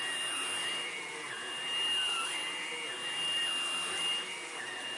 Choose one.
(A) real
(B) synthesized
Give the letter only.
A